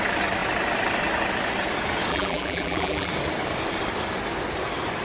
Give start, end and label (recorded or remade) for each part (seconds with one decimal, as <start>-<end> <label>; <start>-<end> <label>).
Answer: 0.0-2.1 recorded; 2.1-3.1 remade; 3.1-5.0 recorded